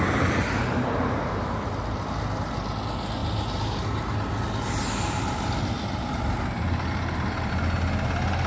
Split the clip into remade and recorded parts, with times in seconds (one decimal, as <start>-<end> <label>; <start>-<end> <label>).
0.0-8.5 recorded